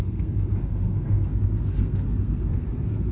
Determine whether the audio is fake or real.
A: fake